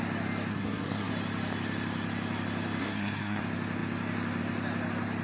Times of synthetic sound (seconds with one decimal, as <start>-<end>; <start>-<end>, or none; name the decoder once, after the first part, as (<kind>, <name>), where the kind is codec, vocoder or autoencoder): 0.5-1.1 (codec, SNAC); 2.8-3.4